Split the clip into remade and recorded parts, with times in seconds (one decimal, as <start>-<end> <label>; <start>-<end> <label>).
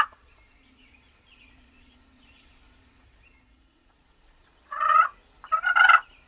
0.0-5.1 remade; 5.1-6.3 recorded